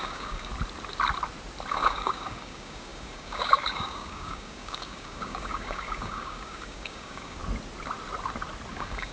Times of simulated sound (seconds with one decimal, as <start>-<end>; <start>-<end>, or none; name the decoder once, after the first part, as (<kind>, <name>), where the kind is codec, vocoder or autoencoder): 0.0-0.5 (codec, DAC); 1.7-7.4; 8.7-9.1